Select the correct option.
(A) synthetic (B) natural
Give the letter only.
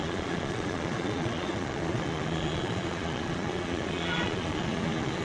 A